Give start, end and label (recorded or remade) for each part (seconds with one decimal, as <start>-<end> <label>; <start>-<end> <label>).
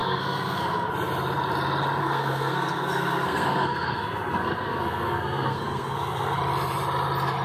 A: 0.0-0.9 remade; 0.9-2.0 recorded; 2.0-6.4 remade; 6.4-7.4 recorded